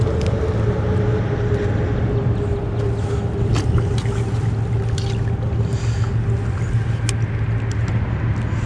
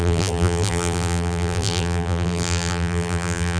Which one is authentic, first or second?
first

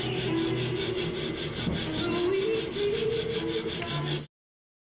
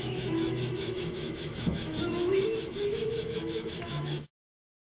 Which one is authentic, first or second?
first